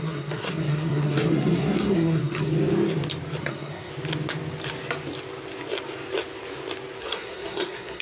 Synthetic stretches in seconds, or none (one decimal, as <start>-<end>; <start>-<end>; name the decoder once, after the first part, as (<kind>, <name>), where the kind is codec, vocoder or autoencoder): 0.0-2.5 (codec, SNAC); 3.4-3.9; 7.0-8.0